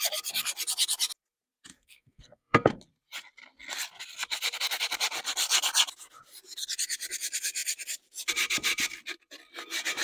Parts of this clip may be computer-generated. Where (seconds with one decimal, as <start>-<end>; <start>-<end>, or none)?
1.7-2.8